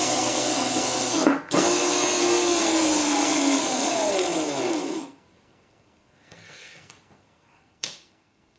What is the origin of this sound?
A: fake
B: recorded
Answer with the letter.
A